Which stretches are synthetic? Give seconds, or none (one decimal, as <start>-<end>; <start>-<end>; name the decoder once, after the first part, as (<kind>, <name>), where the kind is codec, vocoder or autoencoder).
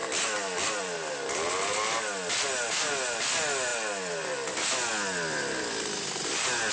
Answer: none